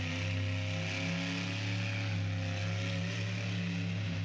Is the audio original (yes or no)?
yes